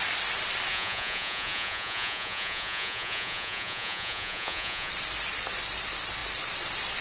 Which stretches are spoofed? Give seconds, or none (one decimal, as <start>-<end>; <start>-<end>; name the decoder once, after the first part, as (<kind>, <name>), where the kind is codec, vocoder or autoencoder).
0.7-4.9 (vocoder, Vocos)